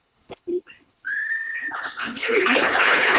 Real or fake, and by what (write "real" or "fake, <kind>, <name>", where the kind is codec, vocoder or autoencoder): fake, codec, HILCodec